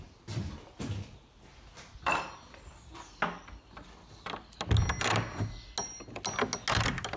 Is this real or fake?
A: real